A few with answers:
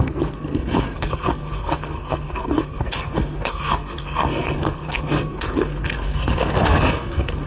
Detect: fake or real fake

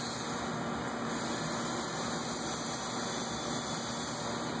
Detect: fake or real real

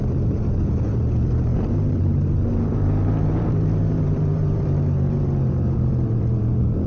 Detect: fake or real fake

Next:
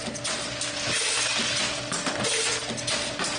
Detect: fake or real real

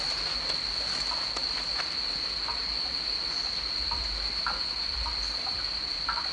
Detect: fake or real real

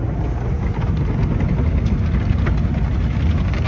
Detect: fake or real real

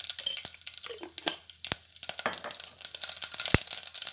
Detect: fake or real real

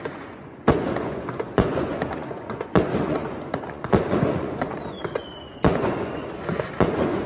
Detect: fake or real fake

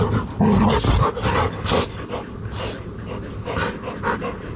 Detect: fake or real real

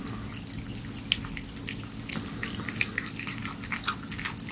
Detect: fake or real real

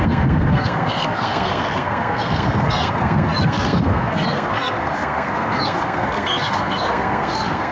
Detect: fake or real fake